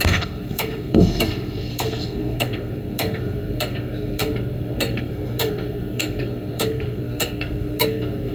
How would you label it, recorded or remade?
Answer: remade